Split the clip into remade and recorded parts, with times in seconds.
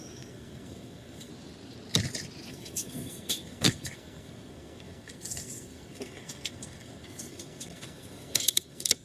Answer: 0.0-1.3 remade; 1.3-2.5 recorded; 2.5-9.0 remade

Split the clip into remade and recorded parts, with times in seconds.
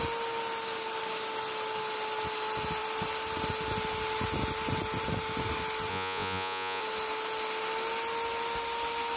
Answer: 0.0-5.9 recorded; 5.9-6.8 remade; 6.8-9.2 recorded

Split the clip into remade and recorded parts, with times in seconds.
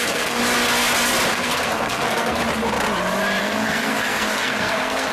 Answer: 0.0-0.4 remade; 0.4-1.3 recorded; 1.3-2.4 remade; 2.4-3.4 recorded; 3.4-5.1 remade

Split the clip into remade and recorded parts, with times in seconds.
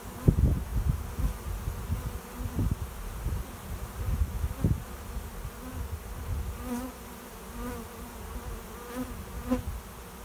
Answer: 0.0-10.2 recorded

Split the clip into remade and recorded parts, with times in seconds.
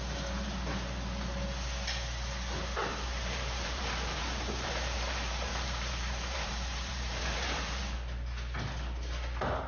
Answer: 0.0-2.8 recorded; 2.8-7.8 remade; 7.8-9.7 recorded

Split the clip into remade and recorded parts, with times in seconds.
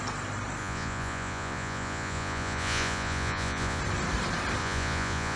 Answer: 0.0-0.6 recorded; 0.6-3.8 remade; 3.8-4.6 recorded; 4.6-5.4 remade